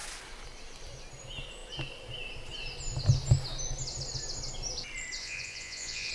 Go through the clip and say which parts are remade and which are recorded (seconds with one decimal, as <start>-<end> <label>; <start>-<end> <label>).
0.0-5.2 recorded; 5.2-6.1 remade